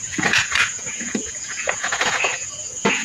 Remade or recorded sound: remade